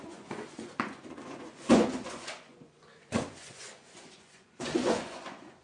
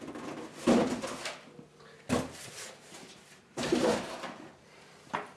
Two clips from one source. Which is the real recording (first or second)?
second